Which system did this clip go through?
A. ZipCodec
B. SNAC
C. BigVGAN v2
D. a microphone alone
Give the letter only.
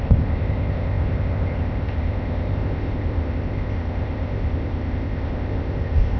A